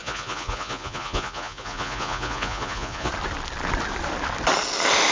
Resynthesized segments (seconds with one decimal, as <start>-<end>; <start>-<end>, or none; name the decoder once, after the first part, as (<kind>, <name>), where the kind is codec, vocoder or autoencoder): 0.0-3.1 (vocoder, Vocos)

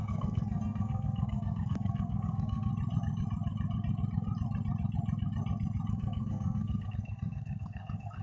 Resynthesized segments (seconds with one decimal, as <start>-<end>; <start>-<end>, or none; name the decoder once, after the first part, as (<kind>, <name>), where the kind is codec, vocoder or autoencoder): 0.0-2.7 (codec, SNAC); 5.9-8.2

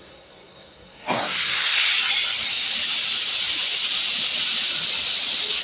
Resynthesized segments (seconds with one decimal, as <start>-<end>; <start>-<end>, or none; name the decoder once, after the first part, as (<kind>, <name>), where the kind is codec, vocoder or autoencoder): 0.0-1.9 (codec, SNAC)

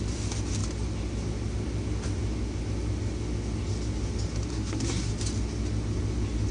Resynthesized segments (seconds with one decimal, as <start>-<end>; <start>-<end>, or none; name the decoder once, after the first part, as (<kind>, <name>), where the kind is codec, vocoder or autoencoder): 4.5-5.1 (codec, SNAC)

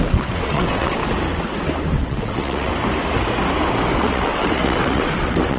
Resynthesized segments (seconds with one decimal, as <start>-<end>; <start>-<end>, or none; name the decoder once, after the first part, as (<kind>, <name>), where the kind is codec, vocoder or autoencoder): 0.0-1.0 (vocoder, WaveNeXt); 2.0-2.7; 4.0-5.6

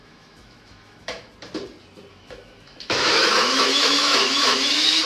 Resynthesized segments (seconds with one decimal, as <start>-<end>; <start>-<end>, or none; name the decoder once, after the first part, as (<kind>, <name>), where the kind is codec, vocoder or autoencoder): 0.0-1.3 (autoencoder, DAC-VAE); 2.1-5.1

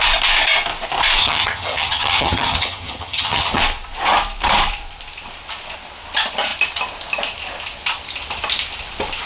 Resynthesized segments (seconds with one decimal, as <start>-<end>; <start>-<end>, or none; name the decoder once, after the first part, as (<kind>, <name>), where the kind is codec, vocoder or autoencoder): 1.2-3.6 (vocoder, HiFi-GAN)

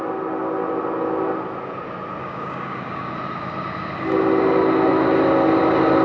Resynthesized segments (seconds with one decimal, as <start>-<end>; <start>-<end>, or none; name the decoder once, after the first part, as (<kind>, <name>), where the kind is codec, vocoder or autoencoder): 2.2-3.1 (codec, DAC)